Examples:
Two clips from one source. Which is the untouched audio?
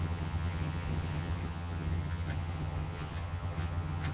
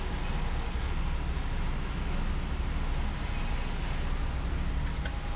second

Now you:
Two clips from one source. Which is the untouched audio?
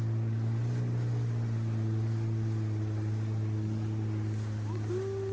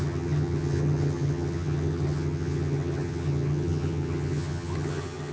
first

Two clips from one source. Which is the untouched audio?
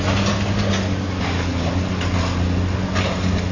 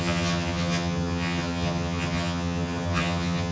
first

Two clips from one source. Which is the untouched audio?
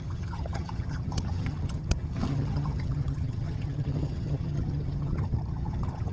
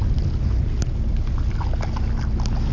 second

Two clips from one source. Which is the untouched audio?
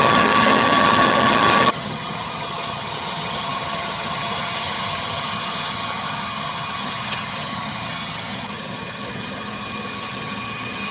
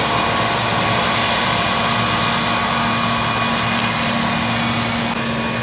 second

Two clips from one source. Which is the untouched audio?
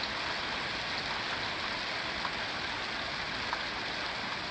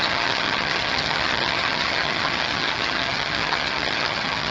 first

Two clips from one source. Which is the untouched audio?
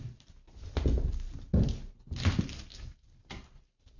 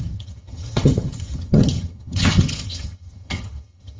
first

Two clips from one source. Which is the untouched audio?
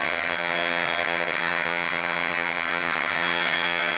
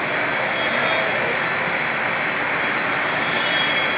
second